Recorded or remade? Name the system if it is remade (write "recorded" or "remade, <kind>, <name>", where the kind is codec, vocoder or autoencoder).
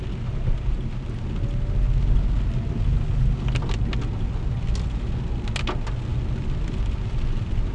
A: recorded